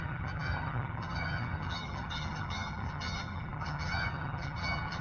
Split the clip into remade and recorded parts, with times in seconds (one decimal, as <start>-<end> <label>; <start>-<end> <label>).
0.0-5.0 remade